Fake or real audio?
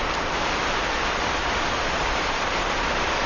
real